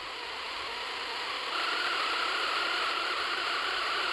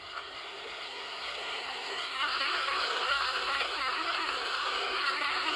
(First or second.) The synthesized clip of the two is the second